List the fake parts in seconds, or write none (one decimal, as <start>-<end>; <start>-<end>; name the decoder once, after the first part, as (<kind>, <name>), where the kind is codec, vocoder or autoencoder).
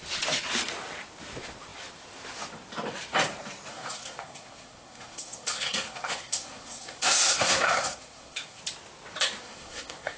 3.7-8.6 (codec, SNAC); 9.4-10.2